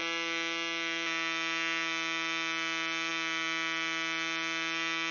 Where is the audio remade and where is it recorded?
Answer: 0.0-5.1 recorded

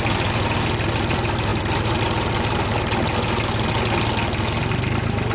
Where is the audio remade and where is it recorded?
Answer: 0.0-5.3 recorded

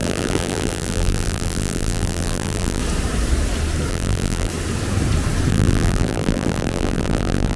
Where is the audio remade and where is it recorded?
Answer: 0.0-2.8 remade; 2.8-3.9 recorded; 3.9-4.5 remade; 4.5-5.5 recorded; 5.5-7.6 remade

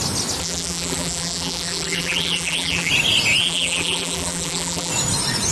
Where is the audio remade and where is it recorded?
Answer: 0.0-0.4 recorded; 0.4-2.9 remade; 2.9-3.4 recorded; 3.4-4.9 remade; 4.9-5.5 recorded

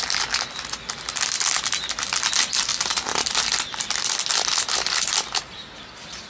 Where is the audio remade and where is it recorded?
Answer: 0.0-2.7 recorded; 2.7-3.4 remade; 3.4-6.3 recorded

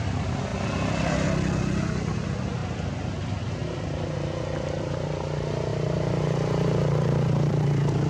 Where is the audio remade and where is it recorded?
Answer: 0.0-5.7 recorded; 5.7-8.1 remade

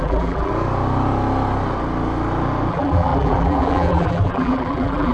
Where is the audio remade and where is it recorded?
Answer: 0.0-0.5 remade; 0.5-2.7 recorded; 2.7-5.1 remade